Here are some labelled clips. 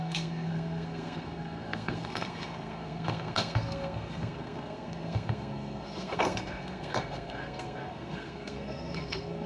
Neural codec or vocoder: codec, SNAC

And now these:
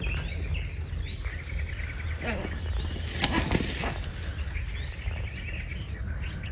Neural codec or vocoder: none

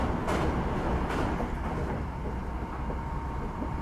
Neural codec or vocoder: none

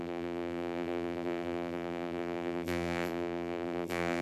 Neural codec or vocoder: vocoder, BigVGAN v2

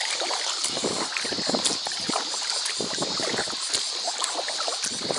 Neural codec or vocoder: none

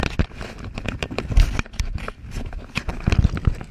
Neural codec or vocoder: none